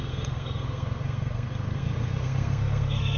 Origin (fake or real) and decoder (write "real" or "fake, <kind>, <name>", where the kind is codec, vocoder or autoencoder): fake, codec, SNAC